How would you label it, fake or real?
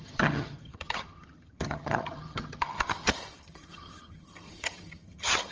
fake